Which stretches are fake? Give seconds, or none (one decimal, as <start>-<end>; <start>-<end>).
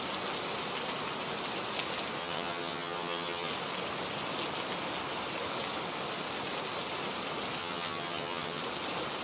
2.2-3.5; 7.6-8.6